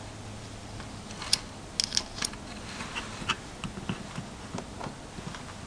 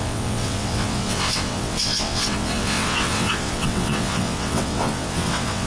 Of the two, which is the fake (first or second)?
second